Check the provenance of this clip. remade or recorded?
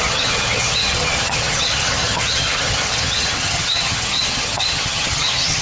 remade